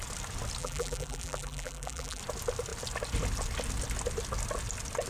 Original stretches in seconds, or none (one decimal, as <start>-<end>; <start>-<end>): 0.0-0.6; 2.2-5.1